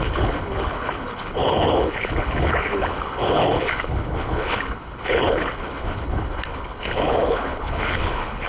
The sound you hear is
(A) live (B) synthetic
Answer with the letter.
B